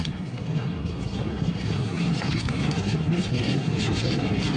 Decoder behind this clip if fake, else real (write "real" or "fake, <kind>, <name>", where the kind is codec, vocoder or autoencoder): fake, codec, SNAC